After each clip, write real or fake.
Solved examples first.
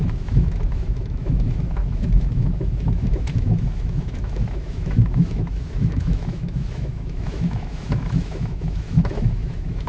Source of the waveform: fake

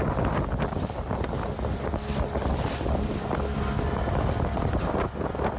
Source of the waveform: real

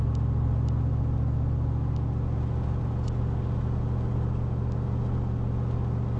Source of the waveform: real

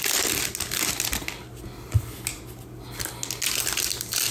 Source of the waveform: real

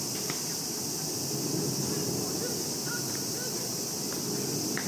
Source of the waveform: real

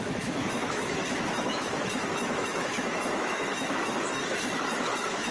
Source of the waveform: fake